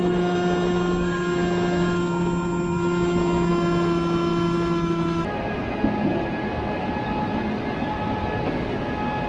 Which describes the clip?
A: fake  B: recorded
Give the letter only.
B